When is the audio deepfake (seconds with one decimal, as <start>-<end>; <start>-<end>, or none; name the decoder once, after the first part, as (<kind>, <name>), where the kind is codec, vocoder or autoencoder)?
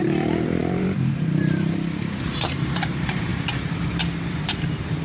0.0-3.3 (vocoder, BigVGAN v2); 4.3-5.0